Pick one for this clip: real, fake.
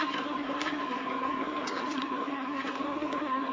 fake